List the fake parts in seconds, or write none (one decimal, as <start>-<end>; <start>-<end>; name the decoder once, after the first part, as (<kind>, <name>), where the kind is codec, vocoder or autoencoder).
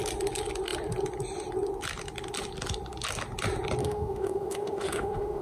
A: 3.8-5.4 (autoencoder, DAC-VAE)